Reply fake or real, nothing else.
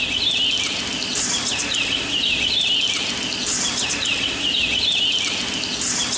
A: real